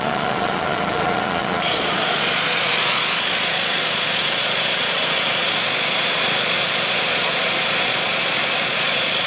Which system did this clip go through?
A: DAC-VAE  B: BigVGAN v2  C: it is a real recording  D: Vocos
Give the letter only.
D